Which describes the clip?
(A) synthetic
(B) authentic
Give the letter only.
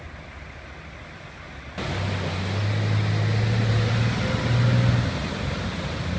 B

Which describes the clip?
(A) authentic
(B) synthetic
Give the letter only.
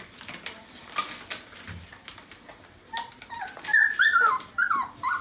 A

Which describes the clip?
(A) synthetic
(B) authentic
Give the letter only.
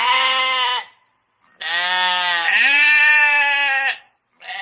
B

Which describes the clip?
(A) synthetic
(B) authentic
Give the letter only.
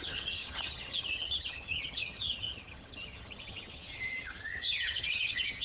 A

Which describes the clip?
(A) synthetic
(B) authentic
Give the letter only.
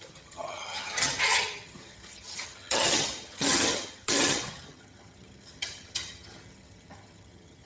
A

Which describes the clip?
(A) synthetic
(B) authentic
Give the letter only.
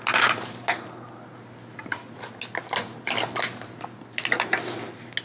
B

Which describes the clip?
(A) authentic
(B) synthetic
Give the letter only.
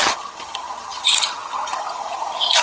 B